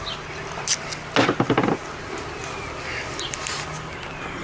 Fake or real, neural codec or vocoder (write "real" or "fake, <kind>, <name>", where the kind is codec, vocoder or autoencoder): real